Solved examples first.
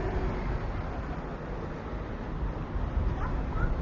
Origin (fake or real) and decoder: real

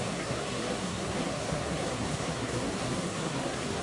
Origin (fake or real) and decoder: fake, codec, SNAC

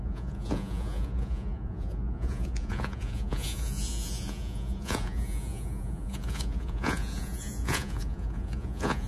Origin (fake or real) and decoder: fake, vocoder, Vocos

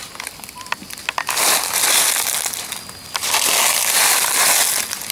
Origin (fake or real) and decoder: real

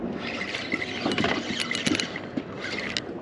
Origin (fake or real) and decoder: real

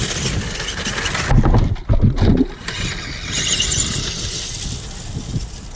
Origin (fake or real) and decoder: real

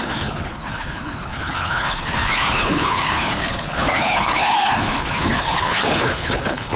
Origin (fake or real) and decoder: fake, codec, HILCodec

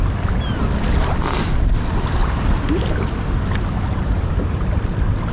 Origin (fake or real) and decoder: real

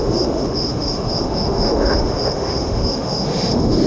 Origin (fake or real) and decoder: fake, autoencoder, DAC-VAE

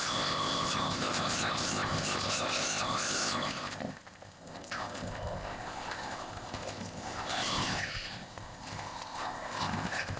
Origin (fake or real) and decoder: fake, codec, ZipCodec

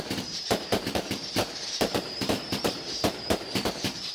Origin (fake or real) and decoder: fake, vocoder, BigVGAN v2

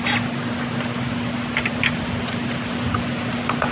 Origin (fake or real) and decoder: real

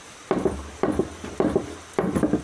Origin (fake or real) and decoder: real